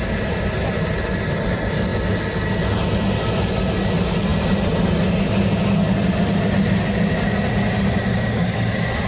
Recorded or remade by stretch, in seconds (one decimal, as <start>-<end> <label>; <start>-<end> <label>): 0.0-8.1 recorded; 8.1-8.7 remade; 8.7-9.1 recorded